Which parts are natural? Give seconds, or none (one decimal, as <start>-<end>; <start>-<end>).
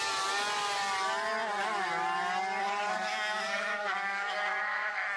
0.0-2.6